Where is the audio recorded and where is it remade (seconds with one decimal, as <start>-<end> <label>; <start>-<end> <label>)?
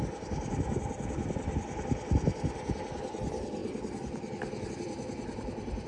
0.0-5.9 recorded